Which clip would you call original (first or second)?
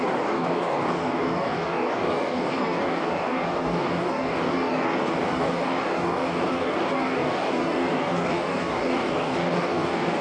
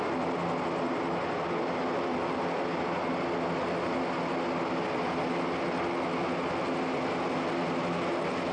second